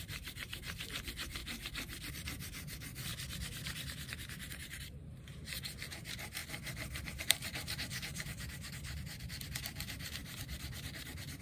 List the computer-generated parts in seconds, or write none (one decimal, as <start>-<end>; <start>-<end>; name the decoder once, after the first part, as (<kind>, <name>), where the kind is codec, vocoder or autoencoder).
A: 0.0-1.4 (vocoder, BigVGAN v2); 2.1-3.1; 4.5-6.4; 7.2-11.4